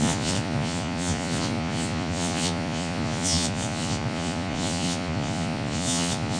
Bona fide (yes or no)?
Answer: no